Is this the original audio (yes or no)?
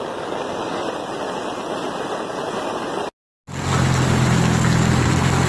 yes